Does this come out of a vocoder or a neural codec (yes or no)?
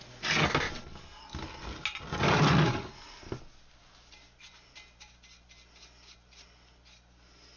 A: no